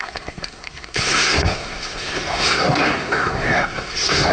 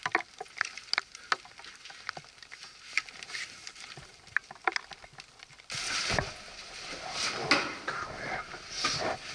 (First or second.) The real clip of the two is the second